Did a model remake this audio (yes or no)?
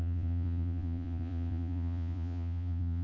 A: yes